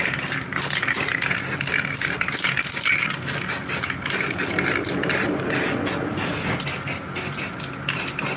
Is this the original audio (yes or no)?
yes